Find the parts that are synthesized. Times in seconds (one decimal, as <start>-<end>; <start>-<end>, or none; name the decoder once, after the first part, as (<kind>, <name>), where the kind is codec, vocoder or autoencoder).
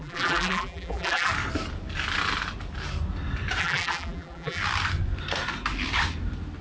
0.0-1.3 (vocoder, BigVGAN v2); 3.6-4.6